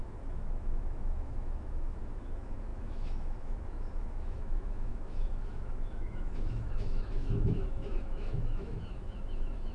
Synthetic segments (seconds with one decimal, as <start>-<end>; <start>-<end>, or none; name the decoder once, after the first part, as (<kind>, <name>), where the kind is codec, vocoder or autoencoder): 0.0-9.7 (autoencoder, DAC-VAE)